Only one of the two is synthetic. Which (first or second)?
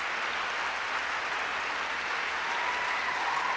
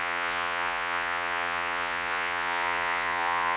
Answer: second